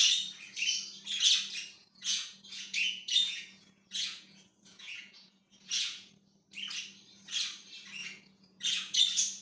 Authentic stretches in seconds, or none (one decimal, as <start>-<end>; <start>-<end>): 0.0-1.8; 6.1-8.0; 9.0-9.4